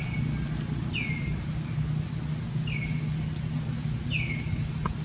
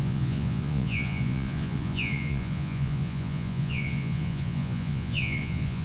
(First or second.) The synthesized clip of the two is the second